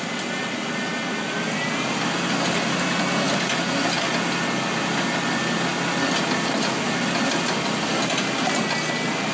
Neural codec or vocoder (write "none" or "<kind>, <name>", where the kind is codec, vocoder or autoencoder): none